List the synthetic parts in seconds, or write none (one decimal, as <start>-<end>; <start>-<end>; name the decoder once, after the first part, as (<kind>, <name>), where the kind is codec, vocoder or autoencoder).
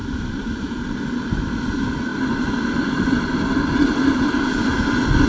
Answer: 0.0-0.8 (vocoder, BigVGAN v2)